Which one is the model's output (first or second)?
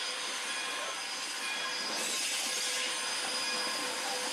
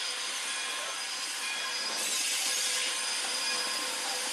second